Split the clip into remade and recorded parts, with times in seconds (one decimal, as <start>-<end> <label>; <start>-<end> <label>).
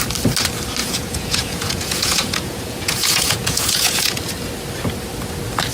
0.0-0.8 recorded; 0.8-4.2 remade; 4.2-5.7 recorded